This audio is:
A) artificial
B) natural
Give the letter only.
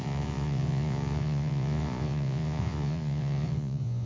A